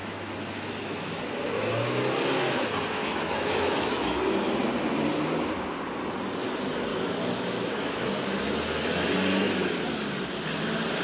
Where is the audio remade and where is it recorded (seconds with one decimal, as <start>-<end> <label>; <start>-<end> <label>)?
0.0-1.2 remade; 1.2-3.0 recorded; 3.0-4.2 remade; 4.2-6.9 recorded; 6.9-8.2 remade; 8.2-11.0 recorded